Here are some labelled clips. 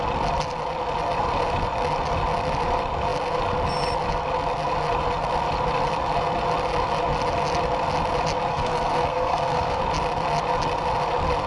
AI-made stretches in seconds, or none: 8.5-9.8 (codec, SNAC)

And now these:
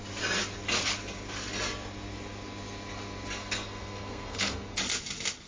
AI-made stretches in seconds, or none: 3.4-4.8 (codec, SNAC)

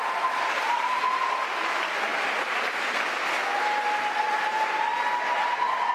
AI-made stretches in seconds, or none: none